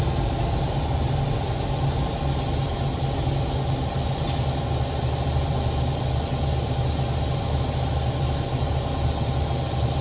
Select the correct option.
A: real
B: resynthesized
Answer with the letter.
A